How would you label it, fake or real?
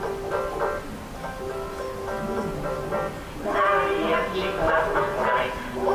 real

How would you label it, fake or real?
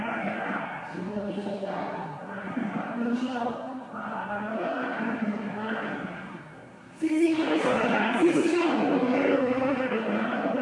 fake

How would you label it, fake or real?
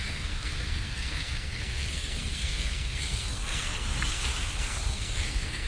fake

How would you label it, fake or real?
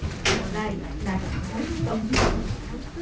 real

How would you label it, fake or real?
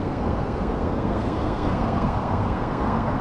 fake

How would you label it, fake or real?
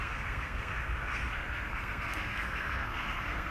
fake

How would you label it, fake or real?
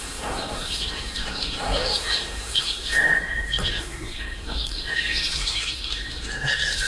fake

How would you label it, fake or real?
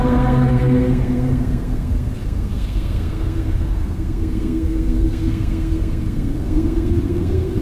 fake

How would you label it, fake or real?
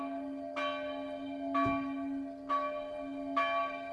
real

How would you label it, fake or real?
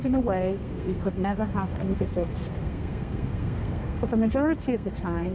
fake